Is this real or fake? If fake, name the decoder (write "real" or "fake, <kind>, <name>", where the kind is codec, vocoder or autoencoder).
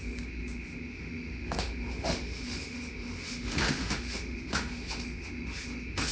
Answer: fake, autoencoder, DAC-VAE